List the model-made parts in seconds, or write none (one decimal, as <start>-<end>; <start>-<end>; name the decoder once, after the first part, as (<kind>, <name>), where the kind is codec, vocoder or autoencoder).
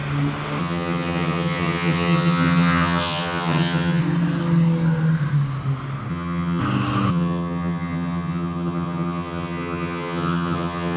0.6-4.0 (vocoder, HiFi-GAN); 6.1-6.6; 7.1-11.0